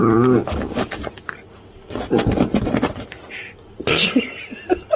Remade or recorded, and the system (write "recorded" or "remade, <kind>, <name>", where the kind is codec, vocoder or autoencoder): recorded